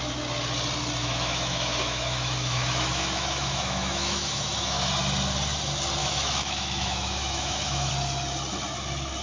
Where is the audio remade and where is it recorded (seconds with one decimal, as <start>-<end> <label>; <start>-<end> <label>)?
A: 0.0-1.0 recorded; 1.0-4.9 remade; 4.9-6.0 recorded; 6.0-7.9 remade; 7.9-9.2 recorded